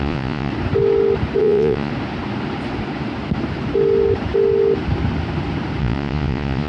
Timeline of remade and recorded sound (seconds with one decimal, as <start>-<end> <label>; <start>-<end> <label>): 0.0-0.5 remade; 0.5-1.4 recorded; 1.4-1.9 remade; 1.9-5.8 recorded; 5.8-6.7 remade